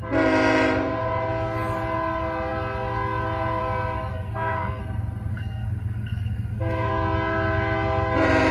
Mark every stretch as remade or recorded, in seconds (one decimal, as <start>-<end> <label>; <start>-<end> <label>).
0.0-4.1 recorded; 4.1-4.8 remade; 4.8-5.3 recorded; 5.3-6.9 remade; 6.9-8.5 recorded